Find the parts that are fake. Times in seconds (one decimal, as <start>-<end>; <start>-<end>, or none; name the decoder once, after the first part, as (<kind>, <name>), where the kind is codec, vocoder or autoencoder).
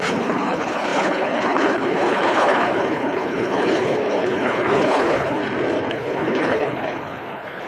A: 0.0-5.4 (codec, HILCodec); 5.9-7.7